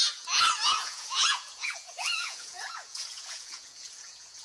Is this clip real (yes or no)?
no